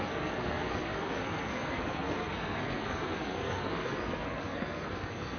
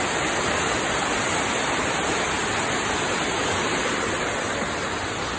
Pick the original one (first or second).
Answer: second